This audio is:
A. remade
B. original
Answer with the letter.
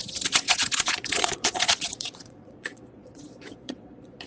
A